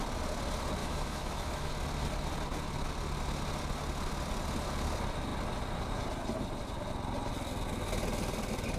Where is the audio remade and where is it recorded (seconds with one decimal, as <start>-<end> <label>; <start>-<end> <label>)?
0.0-0.8 recorded; 0.8-1.7 remade; 1.7-8.8 recorded

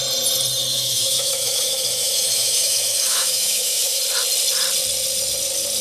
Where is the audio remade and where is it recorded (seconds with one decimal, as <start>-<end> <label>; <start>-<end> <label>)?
0.0-0.7 recorded; 0.7-4.0 remade; 4.0-5.8 recorded

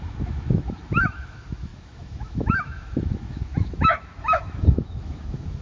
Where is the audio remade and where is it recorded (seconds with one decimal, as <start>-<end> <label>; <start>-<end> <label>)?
0.0-5.6 remade

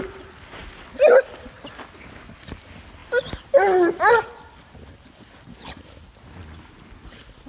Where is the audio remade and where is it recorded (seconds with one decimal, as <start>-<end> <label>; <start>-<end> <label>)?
0.0-7.5 recorded

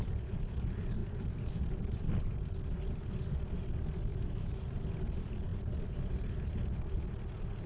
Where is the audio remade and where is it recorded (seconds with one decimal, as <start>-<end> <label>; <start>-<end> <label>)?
0.0-4.1 recorded; 4.1-4.6 remade; 4.6-7.7 recorded

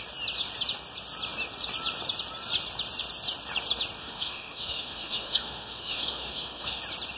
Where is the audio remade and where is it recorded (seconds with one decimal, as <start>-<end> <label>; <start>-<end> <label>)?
0.0-4.0 recorded; 4.0-6.8 remade; 6.8-7.2 recorded